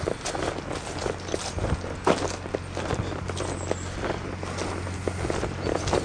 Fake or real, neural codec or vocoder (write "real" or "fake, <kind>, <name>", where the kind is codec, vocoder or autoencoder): real